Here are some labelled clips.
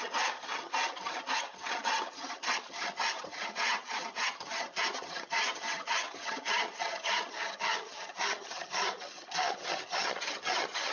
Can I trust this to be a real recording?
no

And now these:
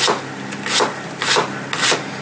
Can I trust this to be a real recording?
yes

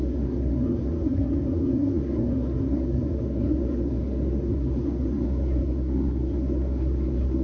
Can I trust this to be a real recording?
no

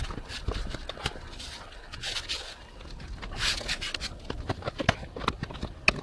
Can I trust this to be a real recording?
yes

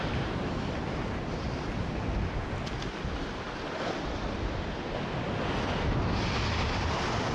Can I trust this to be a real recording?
yes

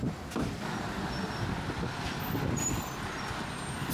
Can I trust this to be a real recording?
yes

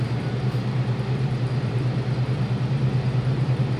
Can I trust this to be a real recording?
no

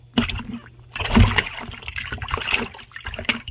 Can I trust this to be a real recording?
yes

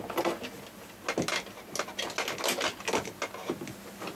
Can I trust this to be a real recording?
yes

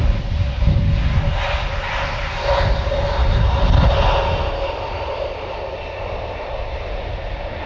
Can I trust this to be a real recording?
yes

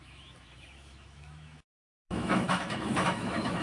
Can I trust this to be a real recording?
no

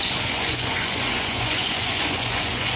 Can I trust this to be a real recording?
no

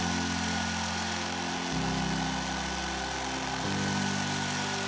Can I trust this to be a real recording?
yes